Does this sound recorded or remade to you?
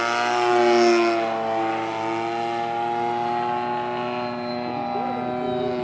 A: recorded